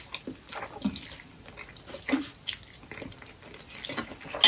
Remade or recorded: recorded